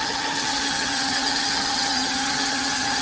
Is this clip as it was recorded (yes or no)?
no